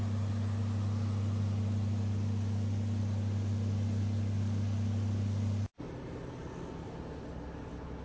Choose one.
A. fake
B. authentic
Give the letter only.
B